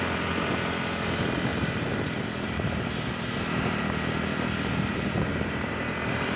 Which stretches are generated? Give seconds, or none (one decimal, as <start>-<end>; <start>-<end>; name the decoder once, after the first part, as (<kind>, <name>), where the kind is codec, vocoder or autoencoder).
1.5-3.8 (vocoder, BigVGAN v2); 4.9-6.4